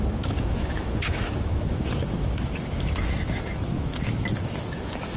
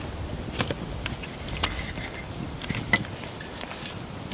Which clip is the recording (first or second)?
second